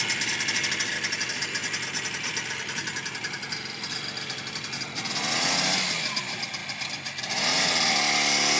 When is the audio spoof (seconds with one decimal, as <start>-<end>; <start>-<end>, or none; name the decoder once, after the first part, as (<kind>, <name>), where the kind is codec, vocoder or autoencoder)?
none